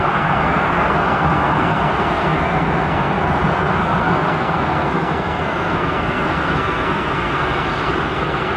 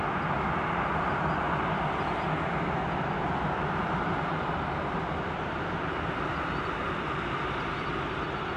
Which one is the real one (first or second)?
second